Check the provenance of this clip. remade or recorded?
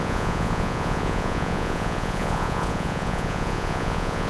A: remade